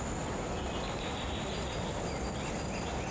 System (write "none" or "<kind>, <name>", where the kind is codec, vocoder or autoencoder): none